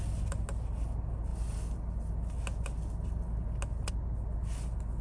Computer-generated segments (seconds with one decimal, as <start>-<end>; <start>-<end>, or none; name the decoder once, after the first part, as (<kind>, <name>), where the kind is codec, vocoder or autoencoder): none